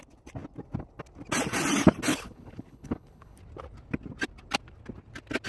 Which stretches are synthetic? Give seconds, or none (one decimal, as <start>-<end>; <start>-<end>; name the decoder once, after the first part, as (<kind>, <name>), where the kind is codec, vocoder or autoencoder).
2.1-3.4 (codec, HILCodec)